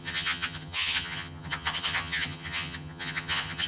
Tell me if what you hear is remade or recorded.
remade